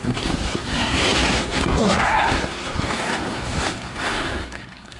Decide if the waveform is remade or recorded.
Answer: remade